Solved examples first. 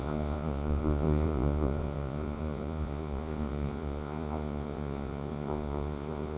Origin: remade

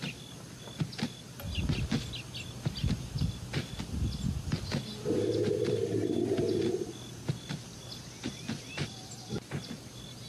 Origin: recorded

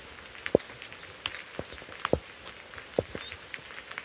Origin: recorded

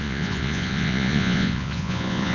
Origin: remade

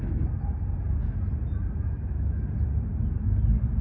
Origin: recorded